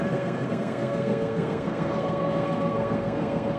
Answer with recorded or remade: remade